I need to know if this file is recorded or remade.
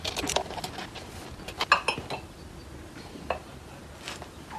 recorded